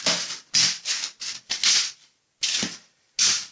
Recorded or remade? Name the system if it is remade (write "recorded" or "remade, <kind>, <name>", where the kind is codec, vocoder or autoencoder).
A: recorded